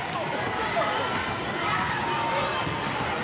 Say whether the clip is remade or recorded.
recorded